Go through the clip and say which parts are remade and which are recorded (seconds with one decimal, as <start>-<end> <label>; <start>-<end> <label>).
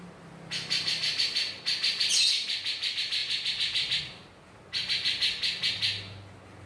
0.0-6.7 recorded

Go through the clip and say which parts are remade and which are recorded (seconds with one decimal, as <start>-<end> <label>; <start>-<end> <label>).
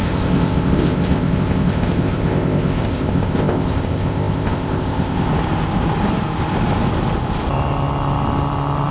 0.0-5.3 remade; 5.3-8.9 recorded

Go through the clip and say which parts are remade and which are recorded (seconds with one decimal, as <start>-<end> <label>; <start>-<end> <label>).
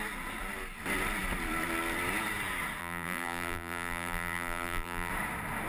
0.0-2.8 recorded; 2.8-5.1 remade; 5.1-5.7 recorded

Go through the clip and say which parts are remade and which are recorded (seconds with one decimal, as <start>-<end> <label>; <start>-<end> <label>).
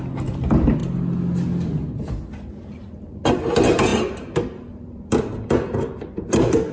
0.0-6.7 recorded